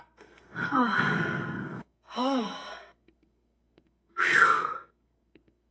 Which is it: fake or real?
fake